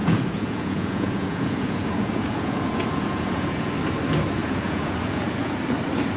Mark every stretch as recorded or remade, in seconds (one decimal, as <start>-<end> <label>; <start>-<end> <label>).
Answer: 0.0-3.7 remade; 3.7-4.4 recorded; 4.4-5.6 remade; 5.6-6.2 recorded